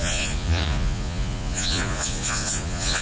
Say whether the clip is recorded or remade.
remade